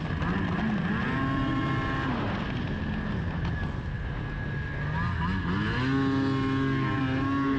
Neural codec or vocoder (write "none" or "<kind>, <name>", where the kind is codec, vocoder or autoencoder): none